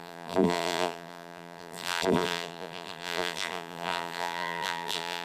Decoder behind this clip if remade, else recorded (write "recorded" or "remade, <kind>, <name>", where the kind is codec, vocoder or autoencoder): remade, vocoder, BigVGAN v2